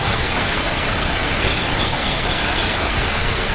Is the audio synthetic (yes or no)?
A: yes